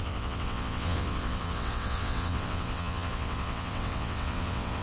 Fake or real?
fake